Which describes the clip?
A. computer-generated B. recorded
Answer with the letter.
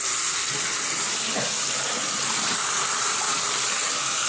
B